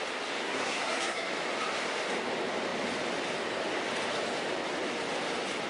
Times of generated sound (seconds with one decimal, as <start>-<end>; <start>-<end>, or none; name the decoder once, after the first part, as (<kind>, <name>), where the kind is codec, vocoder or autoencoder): 0.4-1.3 (codec, SNAC)